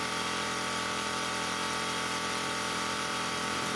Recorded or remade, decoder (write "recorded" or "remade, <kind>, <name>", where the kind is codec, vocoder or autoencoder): remade, vocoder, BigVGAN v2